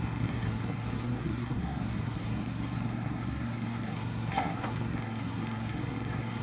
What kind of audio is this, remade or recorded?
remade